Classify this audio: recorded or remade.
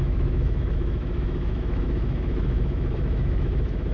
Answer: remade